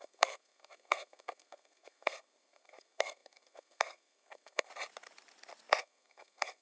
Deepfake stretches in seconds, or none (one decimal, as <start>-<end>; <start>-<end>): 0.0-4.7; 5.8-6.6